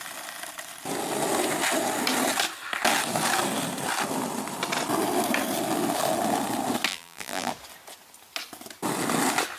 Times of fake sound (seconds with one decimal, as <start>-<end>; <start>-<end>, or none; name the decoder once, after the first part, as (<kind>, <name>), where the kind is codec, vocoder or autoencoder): 6.9-7.5 (vocoder, BigVGAN v2)